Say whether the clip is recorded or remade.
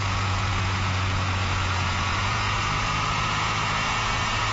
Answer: remade